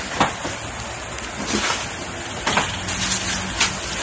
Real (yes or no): yes